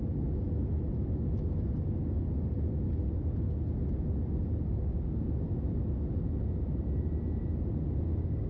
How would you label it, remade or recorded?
recorded